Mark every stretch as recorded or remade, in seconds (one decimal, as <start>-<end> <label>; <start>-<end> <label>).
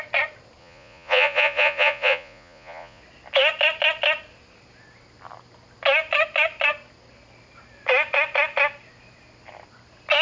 0.0-0.6 recorded; 0.6-3.0 remade; 3.0-10.2 recorded